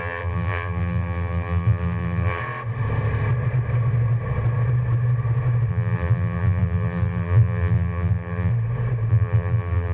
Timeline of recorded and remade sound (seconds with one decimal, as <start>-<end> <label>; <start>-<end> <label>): 0.0-2.4 remade; 2.4-5.7 recorded; 5.7-8.5 remade; 8.5-9.1 recorded; 9.1-9.9 remade